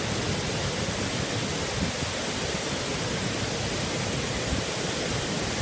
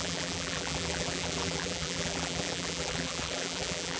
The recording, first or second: first